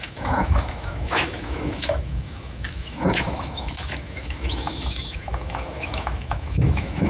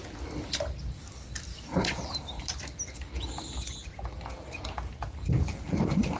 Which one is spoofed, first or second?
first